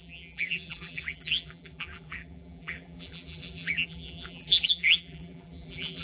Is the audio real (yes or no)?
no